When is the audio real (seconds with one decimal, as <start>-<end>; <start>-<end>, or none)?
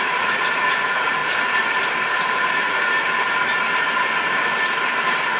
1.2-2.1; 2.8-5.4